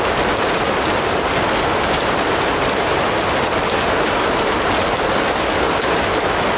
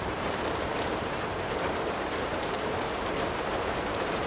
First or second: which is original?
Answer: first